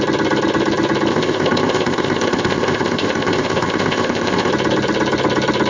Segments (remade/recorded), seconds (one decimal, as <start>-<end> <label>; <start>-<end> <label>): 0.0-1.1 recorded; 1.1-4.5 remade; 4.5-5.7 recorded